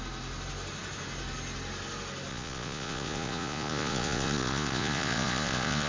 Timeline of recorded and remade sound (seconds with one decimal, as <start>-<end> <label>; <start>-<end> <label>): 0.0-2.3 recorded; 2.3-5.9 remade